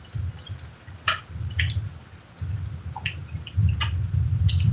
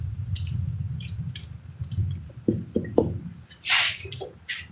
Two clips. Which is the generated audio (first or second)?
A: second